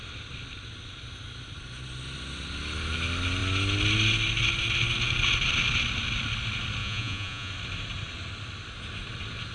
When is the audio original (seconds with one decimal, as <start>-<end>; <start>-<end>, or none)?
0.0-6.8; 7.5-9.5